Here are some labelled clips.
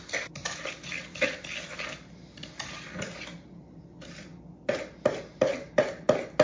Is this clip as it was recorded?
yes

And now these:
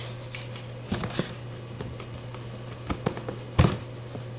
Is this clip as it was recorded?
yes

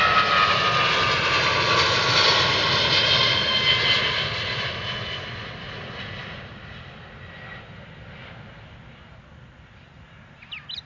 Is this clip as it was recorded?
yes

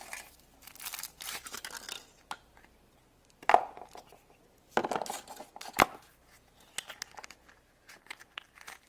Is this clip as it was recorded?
yes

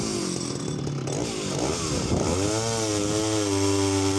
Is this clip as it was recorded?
yes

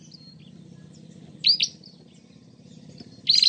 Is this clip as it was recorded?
yes